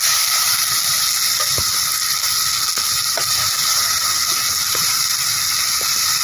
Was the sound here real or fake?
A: real